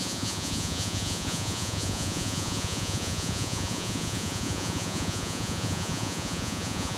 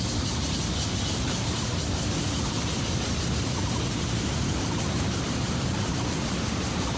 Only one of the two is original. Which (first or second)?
second